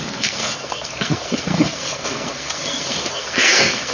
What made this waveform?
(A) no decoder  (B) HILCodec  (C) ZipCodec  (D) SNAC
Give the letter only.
D